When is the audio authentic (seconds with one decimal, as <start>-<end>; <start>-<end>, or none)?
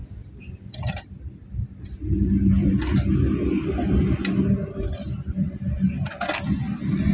0.0-7.1